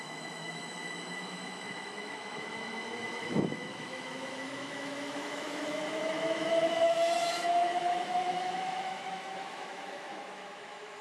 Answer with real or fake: fake